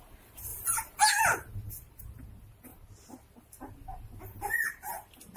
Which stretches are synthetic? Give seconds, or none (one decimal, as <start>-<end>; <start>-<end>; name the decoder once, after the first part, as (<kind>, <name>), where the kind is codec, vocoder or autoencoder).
0.5-1.2 (vocoder, BigVGAN v2)